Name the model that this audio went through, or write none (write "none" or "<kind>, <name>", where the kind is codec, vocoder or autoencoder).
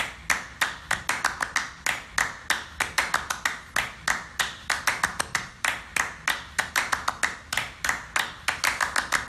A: none